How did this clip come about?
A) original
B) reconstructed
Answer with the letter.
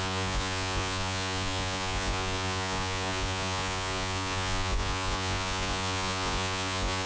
B